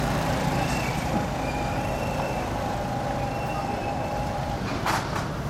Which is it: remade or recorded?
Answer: remade